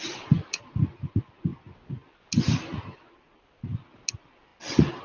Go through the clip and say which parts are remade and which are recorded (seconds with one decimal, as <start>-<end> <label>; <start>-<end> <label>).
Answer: 0.0-5.0 recorded